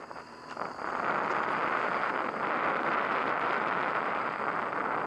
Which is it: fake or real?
real